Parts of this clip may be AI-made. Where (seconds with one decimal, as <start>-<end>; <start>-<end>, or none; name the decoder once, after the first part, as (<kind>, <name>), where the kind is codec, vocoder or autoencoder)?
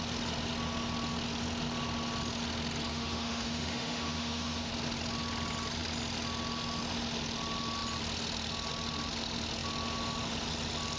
2.9-4.7 (autoencoder, DAC-VAE)